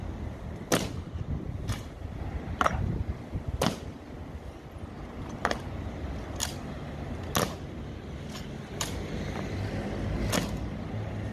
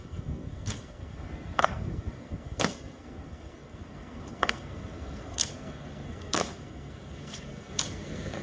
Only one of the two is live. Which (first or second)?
first